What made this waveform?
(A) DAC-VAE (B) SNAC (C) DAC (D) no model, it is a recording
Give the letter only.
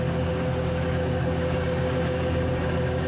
C